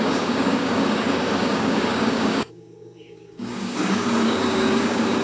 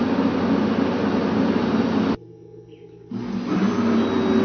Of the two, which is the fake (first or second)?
first